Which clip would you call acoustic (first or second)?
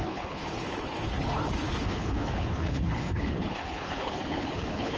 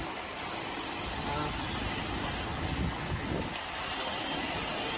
second